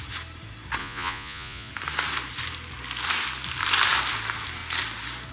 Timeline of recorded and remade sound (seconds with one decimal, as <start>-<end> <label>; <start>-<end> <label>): 0.0-0.8 recorded; 0.8-1.7 remade; 1.7-5.3 recorded